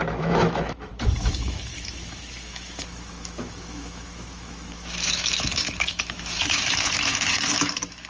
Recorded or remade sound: remade